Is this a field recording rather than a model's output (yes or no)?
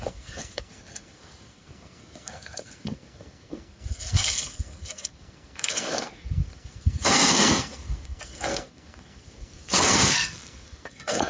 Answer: no